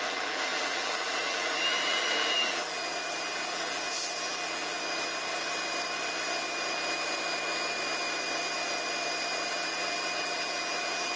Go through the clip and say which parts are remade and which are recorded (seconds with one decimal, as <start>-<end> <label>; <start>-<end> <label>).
0.0-4.8 remade; 4.8-9.5 recorded; 9.5-11.2 remade